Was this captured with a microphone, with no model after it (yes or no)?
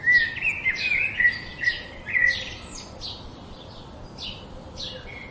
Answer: yes